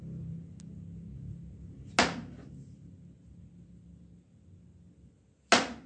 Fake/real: real